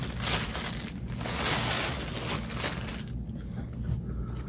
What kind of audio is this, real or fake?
real